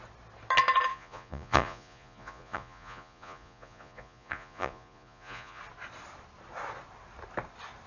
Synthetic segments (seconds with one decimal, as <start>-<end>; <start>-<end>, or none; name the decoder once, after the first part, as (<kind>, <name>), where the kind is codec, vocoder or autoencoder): 0.9-5.6 (vocoder, Vocos)